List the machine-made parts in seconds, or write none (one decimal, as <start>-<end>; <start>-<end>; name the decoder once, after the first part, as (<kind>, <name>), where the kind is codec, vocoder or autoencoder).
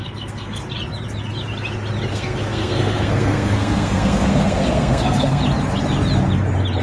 0.0-0.6 (codec, SNAC); 2.1-5.4